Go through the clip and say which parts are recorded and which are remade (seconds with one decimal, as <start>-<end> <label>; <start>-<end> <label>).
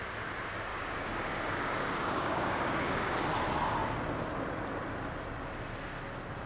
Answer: 0.0-0.7 recorded; 0.7-3.2 remade; 3.2-6.5 recorded